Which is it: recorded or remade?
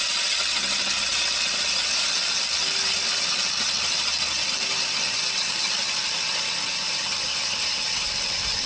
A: remade